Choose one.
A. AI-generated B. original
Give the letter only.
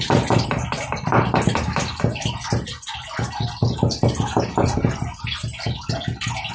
B